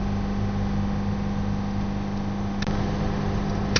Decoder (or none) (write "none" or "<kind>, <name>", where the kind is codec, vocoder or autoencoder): none